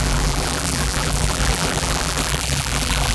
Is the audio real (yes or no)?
no